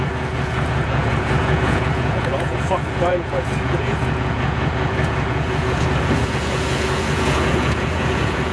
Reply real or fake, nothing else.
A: fake